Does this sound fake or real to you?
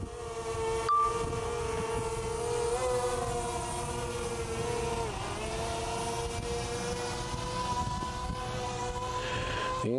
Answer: real